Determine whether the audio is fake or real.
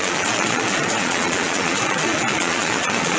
fake